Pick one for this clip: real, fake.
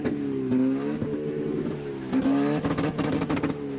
real